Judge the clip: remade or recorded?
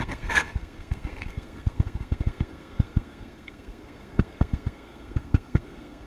remade